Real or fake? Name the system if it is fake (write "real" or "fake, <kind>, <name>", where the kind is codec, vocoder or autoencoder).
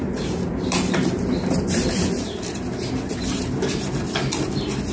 fake, vocoder, BigVGAN v2